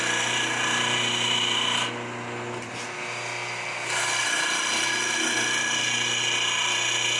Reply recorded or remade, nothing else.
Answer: recorded